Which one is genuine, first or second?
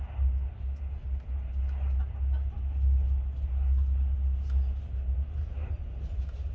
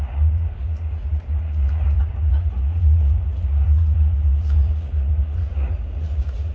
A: first